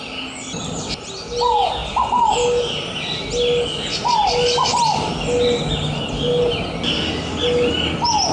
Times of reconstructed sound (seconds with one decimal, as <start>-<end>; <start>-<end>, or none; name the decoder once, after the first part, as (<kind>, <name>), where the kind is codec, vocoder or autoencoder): none